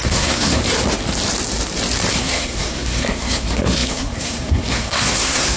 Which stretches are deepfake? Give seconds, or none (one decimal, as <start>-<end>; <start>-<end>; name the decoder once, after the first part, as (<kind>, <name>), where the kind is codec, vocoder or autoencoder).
0.0-0.6 (codec, SNAC); 2.1-5.6